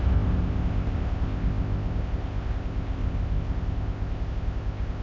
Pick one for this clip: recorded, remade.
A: remade